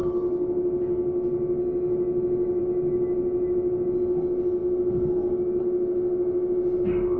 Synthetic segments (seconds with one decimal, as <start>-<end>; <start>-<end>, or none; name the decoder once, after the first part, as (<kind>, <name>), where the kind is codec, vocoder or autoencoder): none